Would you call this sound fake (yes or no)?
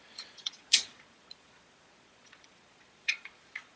yes